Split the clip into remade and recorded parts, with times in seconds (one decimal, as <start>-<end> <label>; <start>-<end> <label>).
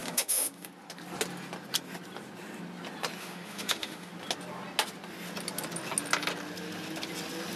0.0-0.7 remade; 0.7-3.2 recorded; 3.2-4.1 remade; 4.1-7.6 recorded